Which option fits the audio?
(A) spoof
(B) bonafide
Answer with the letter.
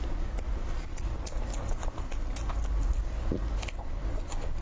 B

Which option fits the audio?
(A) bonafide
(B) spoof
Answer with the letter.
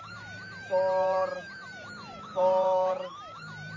B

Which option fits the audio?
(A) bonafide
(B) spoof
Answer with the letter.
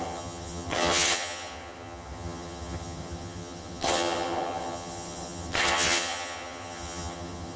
B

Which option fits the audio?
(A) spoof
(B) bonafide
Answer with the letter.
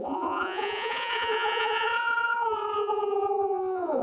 A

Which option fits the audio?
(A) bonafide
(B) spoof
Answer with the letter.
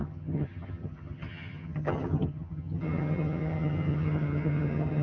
B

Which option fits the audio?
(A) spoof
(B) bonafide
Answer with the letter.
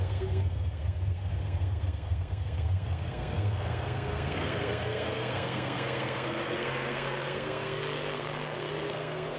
A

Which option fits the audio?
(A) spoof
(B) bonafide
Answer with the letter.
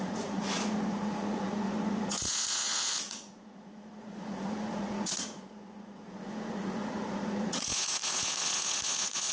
A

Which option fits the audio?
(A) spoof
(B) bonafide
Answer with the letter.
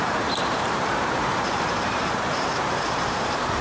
A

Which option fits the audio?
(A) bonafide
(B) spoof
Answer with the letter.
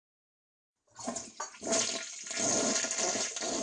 A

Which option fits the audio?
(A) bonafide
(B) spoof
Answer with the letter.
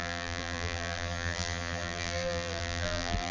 B